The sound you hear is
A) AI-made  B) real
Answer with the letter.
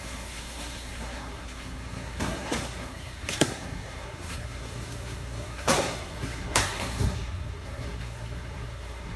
A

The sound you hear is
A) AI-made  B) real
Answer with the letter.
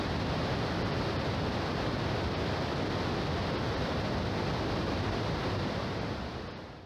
B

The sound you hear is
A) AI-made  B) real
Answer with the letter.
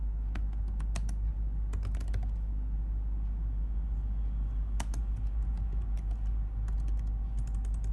B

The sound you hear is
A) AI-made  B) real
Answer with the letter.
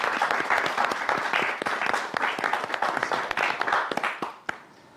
B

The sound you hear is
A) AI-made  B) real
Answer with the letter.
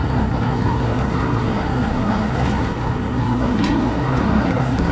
A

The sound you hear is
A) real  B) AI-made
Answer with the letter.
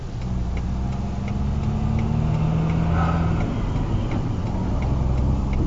A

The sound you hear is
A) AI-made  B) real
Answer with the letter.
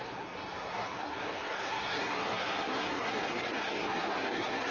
A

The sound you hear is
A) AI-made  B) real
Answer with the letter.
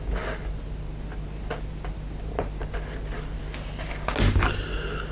B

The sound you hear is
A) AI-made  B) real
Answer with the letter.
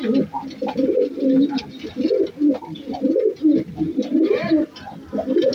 B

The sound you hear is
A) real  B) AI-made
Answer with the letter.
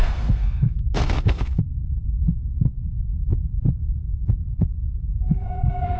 B